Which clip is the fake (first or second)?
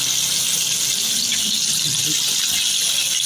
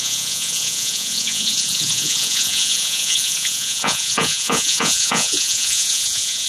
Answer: second